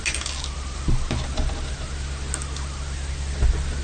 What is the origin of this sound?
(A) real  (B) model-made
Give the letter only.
A